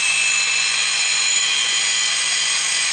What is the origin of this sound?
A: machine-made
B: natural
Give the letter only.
A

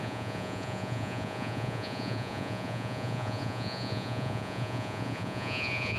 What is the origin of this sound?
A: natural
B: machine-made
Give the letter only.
B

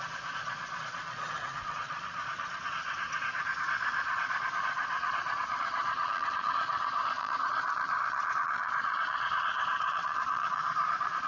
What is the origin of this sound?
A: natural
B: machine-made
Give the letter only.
B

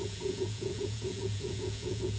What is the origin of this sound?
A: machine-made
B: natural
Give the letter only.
A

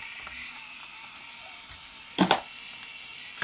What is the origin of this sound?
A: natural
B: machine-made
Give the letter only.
A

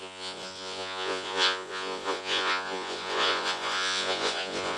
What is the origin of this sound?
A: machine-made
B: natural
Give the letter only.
A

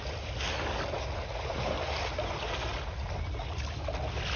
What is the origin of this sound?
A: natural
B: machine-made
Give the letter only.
A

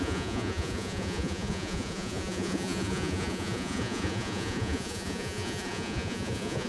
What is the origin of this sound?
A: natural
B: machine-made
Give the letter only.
B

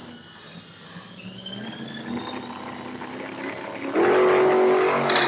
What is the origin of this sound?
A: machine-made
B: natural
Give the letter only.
B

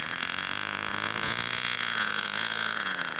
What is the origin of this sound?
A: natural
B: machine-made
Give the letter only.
B